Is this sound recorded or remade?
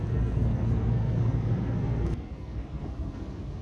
remade